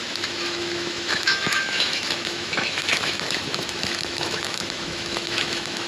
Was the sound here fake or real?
fake